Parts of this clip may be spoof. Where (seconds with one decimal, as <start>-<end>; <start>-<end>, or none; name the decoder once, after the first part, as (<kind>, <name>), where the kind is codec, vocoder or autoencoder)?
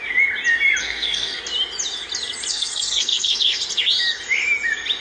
0.8-1.4 (codec, SNAC); 2.5-3.6